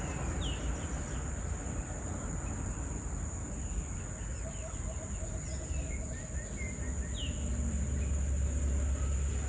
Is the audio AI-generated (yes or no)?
no